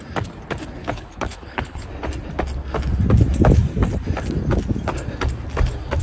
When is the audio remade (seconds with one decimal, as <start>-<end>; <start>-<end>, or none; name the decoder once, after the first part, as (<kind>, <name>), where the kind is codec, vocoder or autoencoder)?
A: 0.8-1.9 (codec, HILCodec)